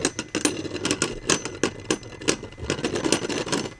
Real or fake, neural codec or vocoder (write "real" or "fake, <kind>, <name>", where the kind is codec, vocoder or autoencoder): real